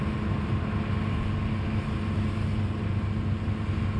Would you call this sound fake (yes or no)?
no